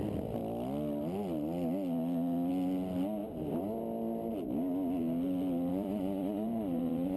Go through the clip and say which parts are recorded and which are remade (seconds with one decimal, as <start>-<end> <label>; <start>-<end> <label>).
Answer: 0.0-5.7 recorded; 5.7-7.2 remade